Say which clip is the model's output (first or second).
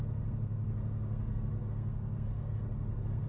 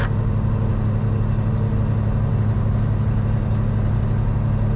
first